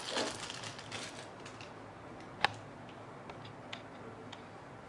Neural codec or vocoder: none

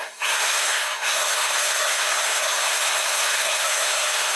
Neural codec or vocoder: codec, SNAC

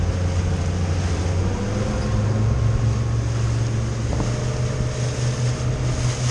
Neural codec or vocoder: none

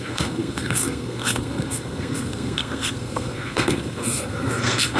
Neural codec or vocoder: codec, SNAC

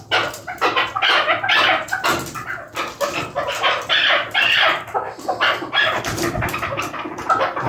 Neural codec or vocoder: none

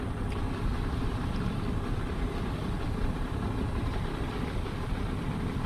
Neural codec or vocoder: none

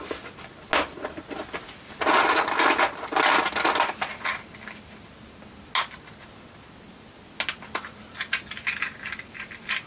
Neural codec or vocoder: none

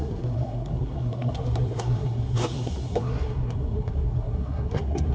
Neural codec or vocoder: codec, SNAC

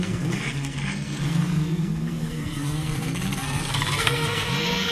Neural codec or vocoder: codec, SNAC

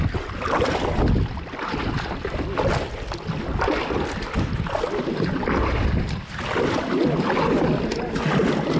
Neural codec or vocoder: none